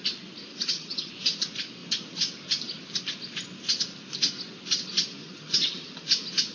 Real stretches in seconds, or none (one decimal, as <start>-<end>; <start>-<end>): 0.0-0.5; 1.1-5.2; 6.1-6.5

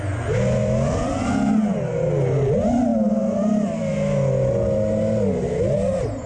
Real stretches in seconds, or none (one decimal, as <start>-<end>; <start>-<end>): 0.0-0.6; 1.3-2.9; 3.9-6.3

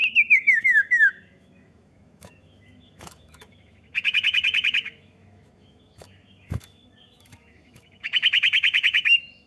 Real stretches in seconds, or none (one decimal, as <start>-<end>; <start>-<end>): none

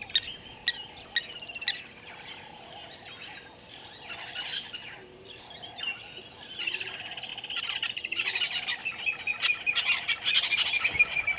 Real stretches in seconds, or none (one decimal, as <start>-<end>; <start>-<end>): 0.0-11.4

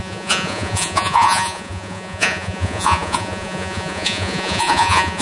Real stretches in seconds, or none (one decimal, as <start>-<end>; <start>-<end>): none